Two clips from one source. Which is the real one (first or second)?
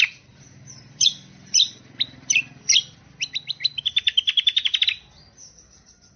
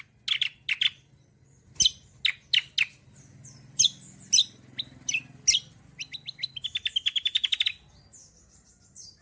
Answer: second